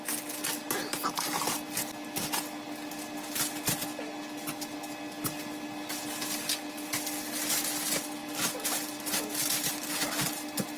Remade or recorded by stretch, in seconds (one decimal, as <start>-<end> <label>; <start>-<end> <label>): 0.0-10.8 recorded